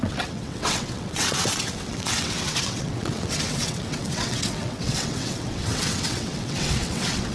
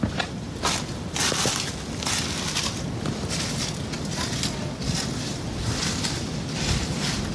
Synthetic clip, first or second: first